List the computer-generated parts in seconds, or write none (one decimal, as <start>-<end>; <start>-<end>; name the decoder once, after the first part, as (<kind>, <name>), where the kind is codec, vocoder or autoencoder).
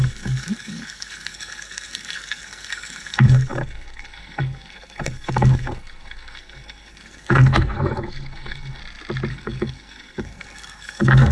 0.0-8.8 (codec, SNAC); 9.3-11.3